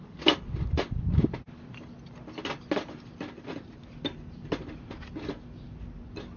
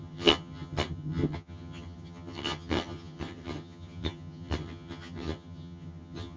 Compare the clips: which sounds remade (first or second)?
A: second